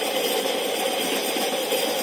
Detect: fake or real real